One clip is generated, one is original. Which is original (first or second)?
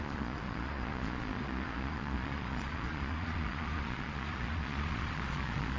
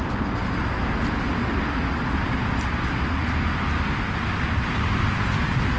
second